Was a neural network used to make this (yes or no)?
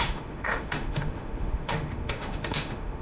yes